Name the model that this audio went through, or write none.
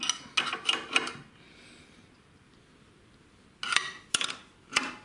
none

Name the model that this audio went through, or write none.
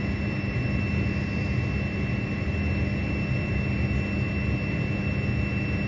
none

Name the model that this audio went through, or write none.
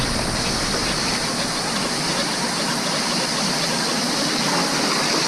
none